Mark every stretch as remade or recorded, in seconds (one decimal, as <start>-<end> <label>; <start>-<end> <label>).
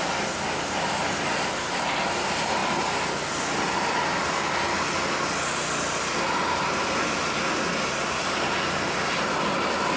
0.0-10.0 recorded